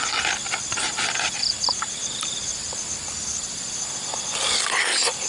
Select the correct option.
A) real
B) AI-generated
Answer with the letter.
A